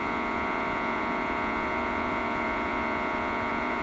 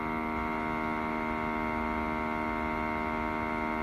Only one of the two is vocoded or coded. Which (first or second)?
first